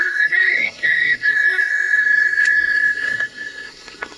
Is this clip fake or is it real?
fake